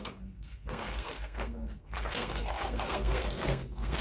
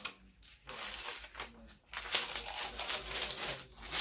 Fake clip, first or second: first